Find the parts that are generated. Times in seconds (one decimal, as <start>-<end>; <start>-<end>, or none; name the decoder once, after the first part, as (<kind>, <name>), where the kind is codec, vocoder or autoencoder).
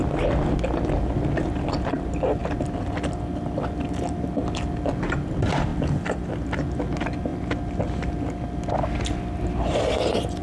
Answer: none